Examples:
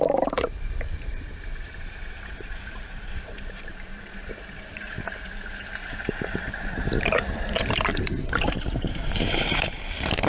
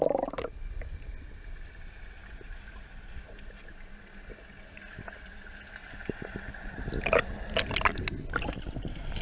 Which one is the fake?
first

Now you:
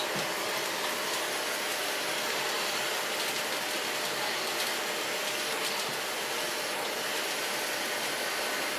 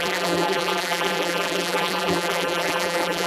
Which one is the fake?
second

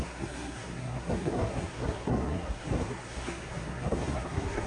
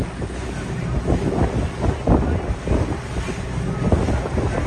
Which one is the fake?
first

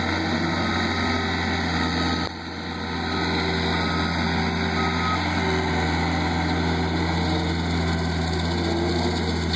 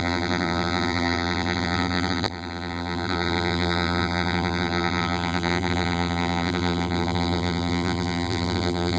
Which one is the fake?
second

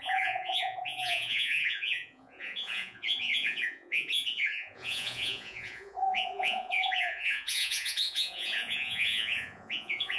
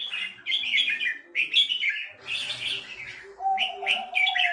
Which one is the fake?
first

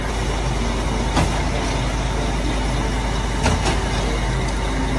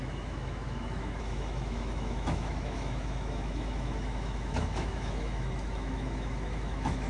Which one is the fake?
second